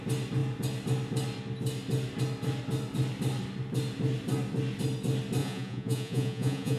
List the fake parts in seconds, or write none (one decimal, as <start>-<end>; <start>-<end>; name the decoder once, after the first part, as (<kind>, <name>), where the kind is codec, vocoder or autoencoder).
5.4-6.8 (vocoder, Vocos)